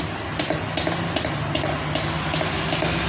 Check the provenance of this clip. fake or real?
real